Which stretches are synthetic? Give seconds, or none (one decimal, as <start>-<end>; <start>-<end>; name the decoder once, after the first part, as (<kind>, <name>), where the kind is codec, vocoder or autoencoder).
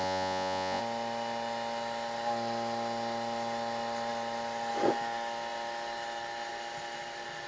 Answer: 0.0-0.8 (vocoder, Vocos)